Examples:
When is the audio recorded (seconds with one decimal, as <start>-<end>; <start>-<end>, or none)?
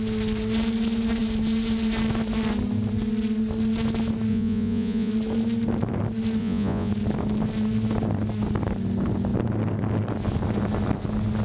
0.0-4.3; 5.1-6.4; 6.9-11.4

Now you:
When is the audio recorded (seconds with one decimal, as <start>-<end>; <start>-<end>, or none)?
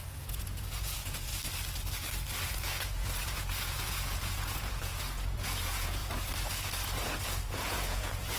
1.3-2.5; 6.0-7.5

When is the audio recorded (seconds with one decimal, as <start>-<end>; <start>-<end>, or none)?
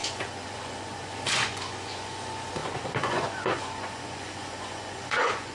none